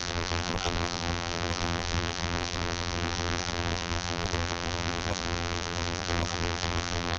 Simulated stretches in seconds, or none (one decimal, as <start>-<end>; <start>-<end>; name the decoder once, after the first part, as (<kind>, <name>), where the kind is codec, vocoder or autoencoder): 0.0-7.2 (vocoder, BigVGAN v2)